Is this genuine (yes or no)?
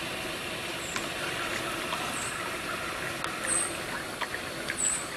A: yes